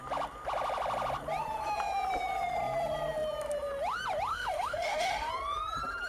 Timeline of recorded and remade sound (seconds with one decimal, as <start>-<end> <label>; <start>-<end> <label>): 0.0-4.3 recorded; 4.3-5.3 remade; 5.3-6.1 recorded